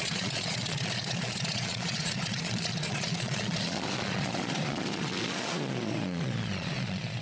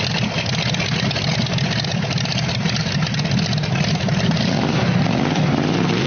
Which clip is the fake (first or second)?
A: first